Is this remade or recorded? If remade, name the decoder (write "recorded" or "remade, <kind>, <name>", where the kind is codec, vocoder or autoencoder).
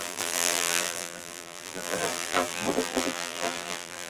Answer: remade, vocoder, BigVGAN v2